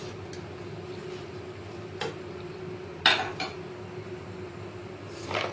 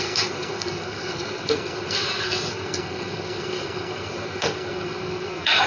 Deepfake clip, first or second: second